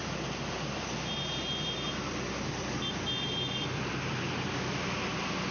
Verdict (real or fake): real